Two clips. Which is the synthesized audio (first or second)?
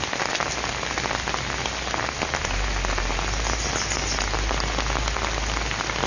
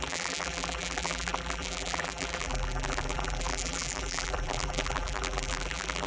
second